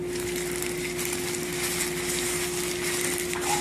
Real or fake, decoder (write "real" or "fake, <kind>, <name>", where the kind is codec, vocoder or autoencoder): real